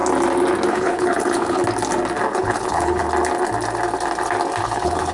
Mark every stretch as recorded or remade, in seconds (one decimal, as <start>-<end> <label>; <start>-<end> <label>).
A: 0.0-0.7 recorded; 0.7-1.6 remade; 1.6-2.3 recorded; 2.3-3.0 remade; 3.0-4.6 recorded; 4.6-5.1 remade